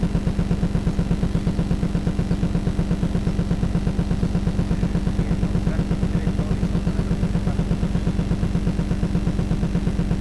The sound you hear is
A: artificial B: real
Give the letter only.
B